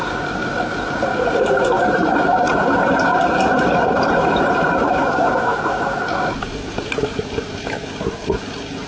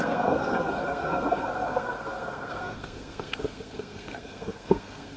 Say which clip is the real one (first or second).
first